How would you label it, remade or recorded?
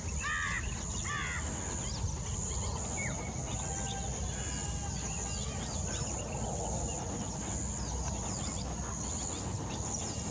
recorded